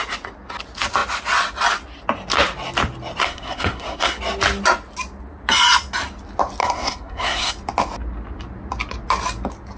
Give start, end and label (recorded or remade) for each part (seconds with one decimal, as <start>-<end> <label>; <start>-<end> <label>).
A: 0.0-3.2 recorded; 3.2-4.2 remade; 4.2-6.6 recorded; 6.6-7.5 remade; 7.5-9.8 recorded